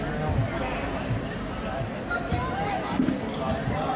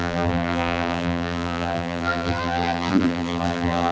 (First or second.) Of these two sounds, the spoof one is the second